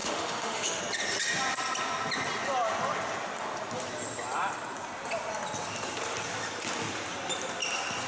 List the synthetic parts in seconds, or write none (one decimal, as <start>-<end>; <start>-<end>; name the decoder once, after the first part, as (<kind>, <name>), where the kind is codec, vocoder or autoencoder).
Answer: 0.0-0.8 (autoencoder, DAC-VAE)